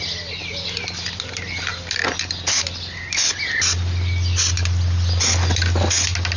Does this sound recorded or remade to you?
recorded